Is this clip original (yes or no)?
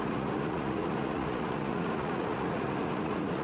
no